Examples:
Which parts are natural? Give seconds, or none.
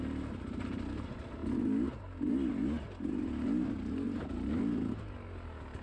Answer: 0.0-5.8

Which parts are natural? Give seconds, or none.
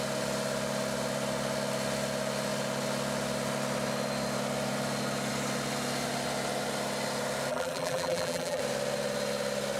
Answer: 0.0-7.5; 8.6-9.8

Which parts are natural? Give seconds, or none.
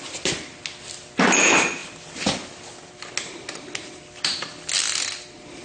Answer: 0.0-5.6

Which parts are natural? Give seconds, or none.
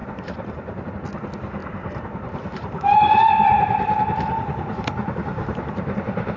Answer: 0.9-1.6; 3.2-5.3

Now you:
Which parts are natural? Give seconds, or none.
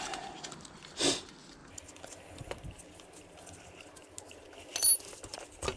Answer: 0.0-5.8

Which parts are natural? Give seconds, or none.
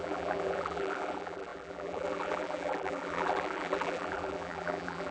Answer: none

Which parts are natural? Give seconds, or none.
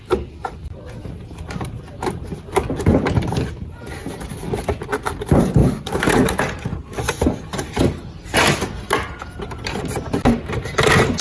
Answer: 0.0-1.0; 2.5-11.2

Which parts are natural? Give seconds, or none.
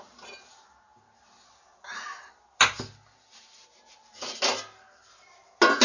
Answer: 0.0-5.8